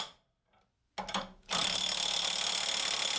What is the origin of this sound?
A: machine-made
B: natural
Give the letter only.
B